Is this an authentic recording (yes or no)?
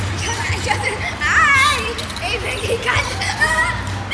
yes